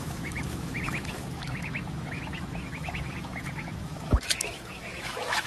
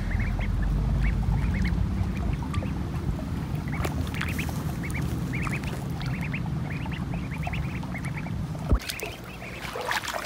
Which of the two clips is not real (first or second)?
first